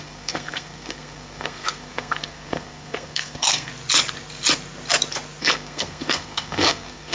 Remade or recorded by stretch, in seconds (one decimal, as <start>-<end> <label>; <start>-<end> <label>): 0.0-3.7 remade; 3.7-5.4 recorded; 5.4-7.1 remade